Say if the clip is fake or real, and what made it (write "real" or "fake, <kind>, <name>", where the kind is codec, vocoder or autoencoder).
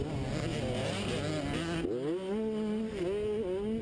real